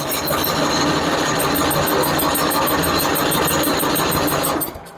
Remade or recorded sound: recorded